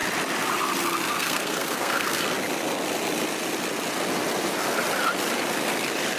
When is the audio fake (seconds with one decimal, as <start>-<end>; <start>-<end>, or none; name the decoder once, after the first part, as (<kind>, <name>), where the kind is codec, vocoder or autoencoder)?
1.1-2.2 (codec, SNAC)